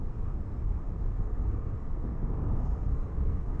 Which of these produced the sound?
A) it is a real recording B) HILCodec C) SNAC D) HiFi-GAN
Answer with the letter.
C